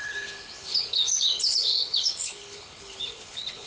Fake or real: fake